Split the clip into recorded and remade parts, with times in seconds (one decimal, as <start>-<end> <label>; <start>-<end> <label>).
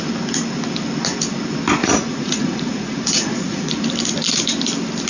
0.0-1.8 recorded; 1.8-3.7 remade; 3.7-5.1 recorded